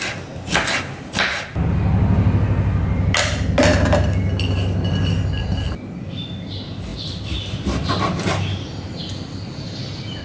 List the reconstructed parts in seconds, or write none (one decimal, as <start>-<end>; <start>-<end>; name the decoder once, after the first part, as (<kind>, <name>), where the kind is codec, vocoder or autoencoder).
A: none